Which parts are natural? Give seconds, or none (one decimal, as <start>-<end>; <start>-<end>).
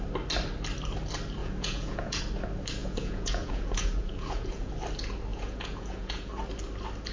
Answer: 0.0-1.4; 2.2-2.8; 4.7-5.3; 6.3-7.1